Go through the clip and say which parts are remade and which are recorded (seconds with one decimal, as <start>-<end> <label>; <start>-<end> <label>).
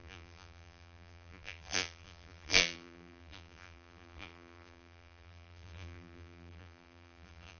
0.0-7.6 remade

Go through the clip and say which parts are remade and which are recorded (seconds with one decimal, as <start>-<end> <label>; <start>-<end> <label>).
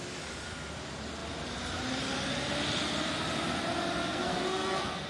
0.0-4.0 recorded; 4.0-5.1 remade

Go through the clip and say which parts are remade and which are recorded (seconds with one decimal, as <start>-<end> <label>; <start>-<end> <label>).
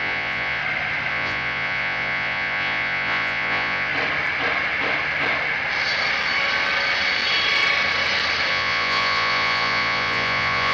0.0-0.6 remade; 0.6-1.1 recorded; 1.1-3.9 remade; 3.9-8.5 recorded; 8.5-10.7 remade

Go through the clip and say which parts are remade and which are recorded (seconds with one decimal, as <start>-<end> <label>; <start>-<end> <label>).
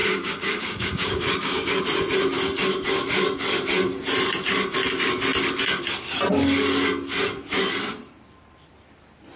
0.0-1.8 remade; 1.8-9.4 recorded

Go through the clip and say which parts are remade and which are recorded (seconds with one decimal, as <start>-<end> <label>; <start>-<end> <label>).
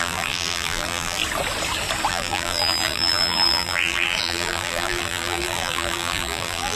0.0-1.2 remade; 1.2-2.1 recorded; 2.1-6.8 remade